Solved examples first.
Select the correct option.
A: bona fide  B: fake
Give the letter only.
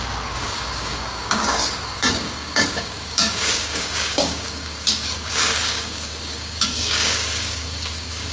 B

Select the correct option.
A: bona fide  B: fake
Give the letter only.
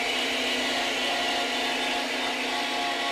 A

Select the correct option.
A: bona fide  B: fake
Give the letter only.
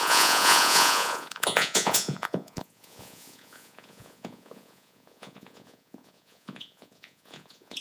B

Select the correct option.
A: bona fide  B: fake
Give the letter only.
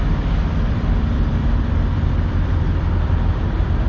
B